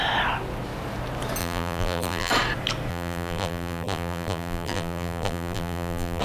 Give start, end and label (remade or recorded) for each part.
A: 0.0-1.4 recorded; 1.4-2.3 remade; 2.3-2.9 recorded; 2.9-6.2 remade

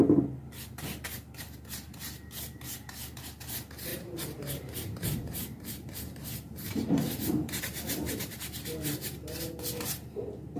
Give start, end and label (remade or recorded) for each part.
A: 0.0-3.9 recorded; 3.9-7.6 remade; 7.6-10.6 recorded

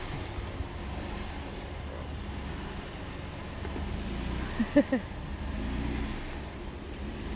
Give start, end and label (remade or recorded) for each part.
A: 0.0-7.4 recorded

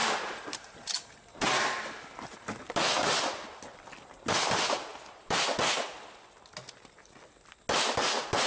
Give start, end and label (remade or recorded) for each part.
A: 0.0-1.9 remade; 1.9-4.9 recorded; 4.9-5.4 remade; 5.4-8.5 recorded

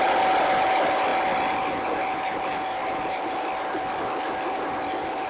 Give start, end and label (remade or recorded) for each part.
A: 0.0-5.3 recorded

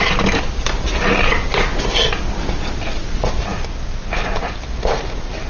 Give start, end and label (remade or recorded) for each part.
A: 0.0-5.5 recorded